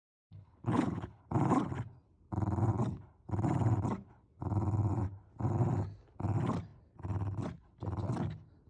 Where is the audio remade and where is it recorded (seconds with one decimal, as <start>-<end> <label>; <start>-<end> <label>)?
0.0-1.2 remade; 1.2-8.7 recorded